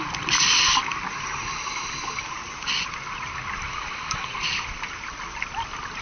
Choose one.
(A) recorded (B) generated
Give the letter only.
A